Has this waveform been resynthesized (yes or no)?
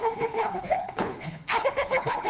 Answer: yes